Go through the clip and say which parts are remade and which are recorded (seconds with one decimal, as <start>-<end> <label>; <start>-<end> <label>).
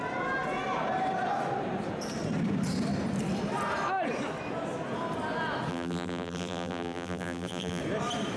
0.0-5.7 recorded; 5.7-7.8 remade; 7.8-8.4 recorded